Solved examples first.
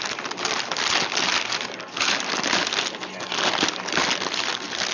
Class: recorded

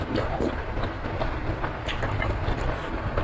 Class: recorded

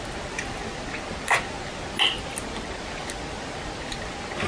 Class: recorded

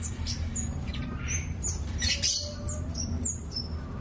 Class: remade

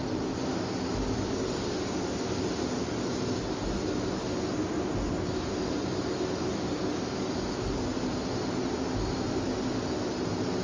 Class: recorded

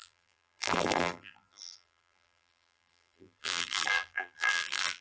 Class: remade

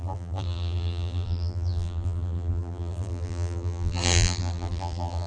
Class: remade